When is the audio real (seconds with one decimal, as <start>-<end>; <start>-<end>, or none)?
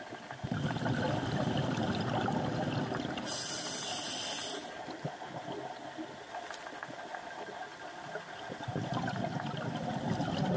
0.0-7.7; 9.0-10.6